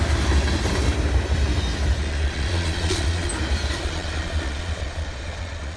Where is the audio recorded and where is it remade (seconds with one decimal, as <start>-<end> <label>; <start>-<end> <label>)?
0.0-2.0 recorded; 2.0-3.3 remade; 3.3-3.8 recorded; 3.8-5.8 remade